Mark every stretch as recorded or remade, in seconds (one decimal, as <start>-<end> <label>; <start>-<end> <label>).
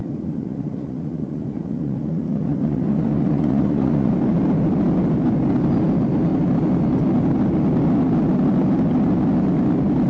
0.0-4.1 remade; 4.1-10.1 recorded